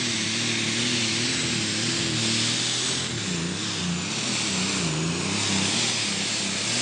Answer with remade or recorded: recorded